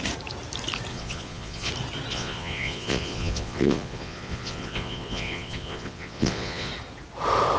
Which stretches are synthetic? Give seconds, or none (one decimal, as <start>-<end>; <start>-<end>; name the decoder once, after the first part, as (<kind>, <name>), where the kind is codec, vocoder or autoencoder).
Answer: 0.9-1.7 (vocoder, Vocos); 2.1-6.7